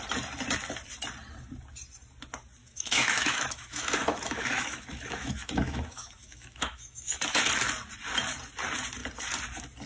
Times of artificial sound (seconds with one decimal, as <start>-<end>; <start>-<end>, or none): 2.6-7.4